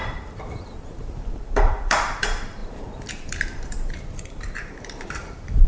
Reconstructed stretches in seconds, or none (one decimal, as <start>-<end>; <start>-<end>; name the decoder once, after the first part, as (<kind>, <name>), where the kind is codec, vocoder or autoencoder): 0.0-5.7 (vocoder, BigVGAN v2)